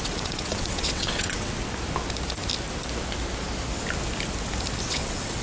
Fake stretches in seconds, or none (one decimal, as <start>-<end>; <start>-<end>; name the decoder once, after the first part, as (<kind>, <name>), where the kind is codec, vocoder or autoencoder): 0.0-1.6 (vocoder, WaveNeXt); 4.8-5.4